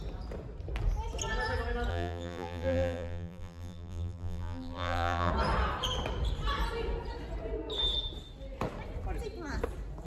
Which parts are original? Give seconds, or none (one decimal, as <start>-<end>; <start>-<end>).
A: 0.0-1.9; 5.3-10.1

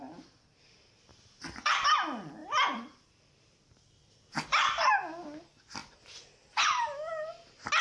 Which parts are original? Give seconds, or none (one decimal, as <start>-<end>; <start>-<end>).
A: 0.0-1.1; 1.7-2.4; 4.9-7.8